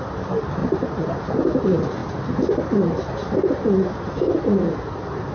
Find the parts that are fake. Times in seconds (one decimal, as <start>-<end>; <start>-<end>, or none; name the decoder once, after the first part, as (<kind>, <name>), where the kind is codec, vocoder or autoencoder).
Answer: 0.6-1.3 (vocoder, BigVGAN v2); 2.0-5.3